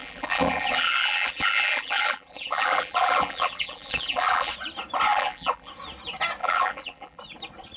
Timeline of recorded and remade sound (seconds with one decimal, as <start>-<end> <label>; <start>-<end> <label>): 0.0-4.5 remade; 4.5-5.1 recorded; 5.1-5.7 remade; 5.7-6.4 recorded; 6.4-7.2 remade; 7.2-7.8 recorded